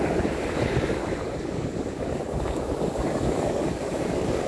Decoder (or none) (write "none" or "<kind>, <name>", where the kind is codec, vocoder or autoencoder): codec, DAC